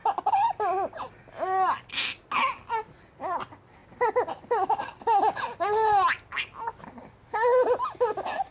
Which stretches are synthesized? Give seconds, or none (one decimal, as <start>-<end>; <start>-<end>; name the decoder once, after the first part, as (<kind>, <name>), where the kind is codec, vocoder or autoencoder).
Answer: none